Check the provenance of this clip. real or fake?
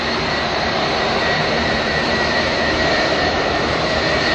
fake